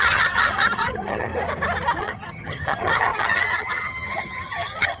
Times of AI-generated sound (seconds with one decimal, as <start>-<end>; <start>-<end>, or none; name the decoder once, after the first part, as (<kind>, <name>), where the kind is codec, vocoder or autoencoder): 0.0-1.3 (vocoder, HiFi-GAN); 2.0-5.0